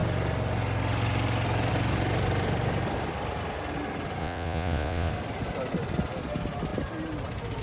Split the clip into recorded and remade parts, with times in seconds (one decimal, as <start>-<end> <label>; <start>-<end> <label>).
0.0-4.2 recorded; 4.2-5.1 remade; 5.1-7.6 recorded